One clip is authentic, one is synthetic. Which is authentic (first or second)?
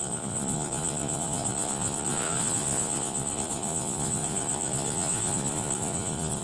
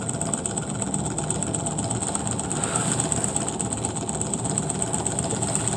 second